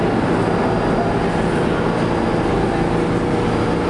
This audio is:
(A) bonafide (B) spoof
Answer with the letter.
A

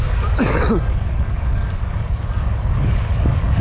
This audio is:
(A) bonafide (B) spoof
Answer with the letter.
B